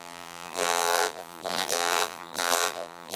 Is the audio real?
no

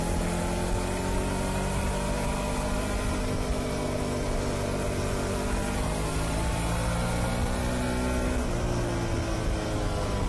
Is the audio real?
yes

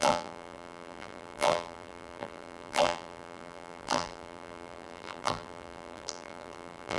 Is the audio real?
no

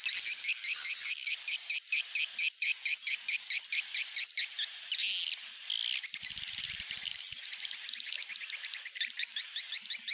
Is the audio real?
yes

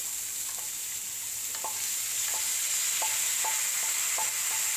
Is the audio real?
yes